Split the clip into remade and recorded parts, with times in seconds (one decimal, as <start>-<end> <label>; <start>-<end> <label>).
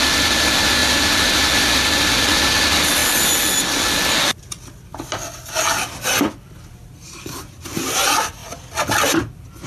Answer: 0.0-3.0 remade; 3.0-6.3 recorded; 6.3-8.4 remade; 8.4-9.2 recorded; 9.2-9.7 remade